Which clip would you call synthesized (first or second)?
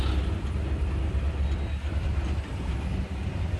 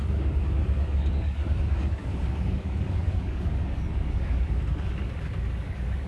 second